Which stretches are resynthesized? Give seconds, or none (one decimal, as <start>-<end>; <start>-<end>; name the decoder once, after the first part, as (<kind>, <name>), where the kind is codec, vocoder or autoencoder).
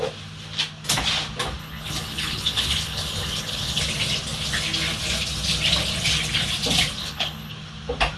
1.6-3.8 (codec, HILCodec); 7.0-7.5